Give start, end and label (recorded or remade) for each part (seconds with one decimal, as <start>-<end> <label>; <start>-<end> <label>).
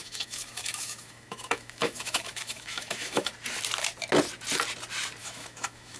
0.0-3.3 remade; 3.3-5.2 recorded; 5.2-6.0 remade